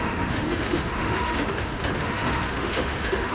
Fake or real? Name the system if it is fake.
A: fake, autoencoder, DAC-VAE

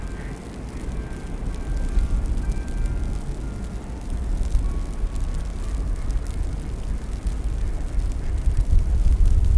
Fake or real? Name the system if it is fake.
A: real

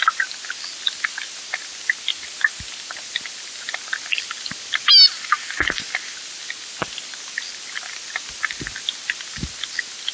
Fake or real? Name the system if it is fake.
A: real